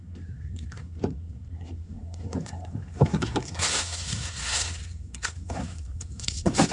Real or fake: fake